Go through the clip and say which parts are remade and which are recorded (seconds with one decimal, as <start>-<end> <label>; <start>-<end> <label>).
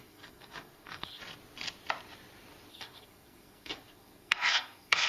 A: 0.0-1.2 remade; 1.2-2.7 recorded; 2.7-5.1 remade